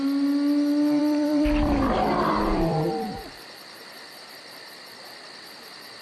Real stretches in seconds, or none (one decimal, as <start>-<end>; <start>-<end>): 0.0-1.0; 3.9-6.0